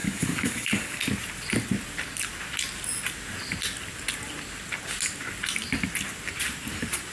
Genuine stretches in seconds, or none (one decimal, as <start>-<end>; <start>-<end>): 1.0-7.1